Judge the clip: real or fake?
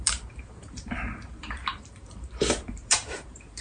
fake